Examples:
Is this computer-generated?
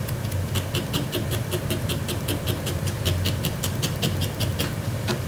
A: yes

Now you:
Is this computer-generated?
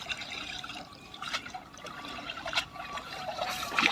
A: yes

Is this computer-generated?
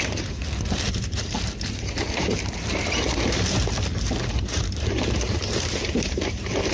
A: yes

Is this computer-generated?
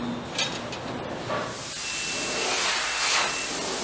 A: no